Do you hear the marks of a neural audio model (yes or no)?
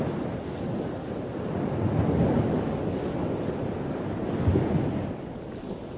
no